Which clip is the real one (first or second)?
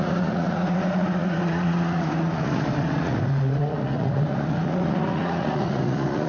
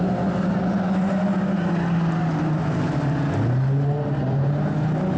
second